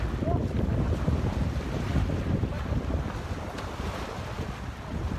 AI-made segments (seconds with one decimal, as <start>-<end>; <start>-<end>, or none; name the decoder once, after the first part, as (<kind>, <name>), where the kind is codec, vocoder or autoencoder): 0.4-1.4 (vocoder, BigVGAN v2); 1.9-2.5